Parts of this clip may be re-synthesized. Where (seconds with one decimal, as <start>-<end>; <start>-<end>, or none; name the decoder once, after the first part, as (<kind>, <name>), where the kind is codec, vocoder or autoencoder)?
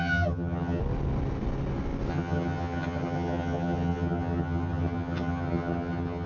0.0-0.8 (vocoder, HiFi-GAN); 2.1-6.3